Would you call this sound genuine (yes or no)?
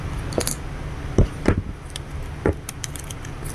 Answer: yes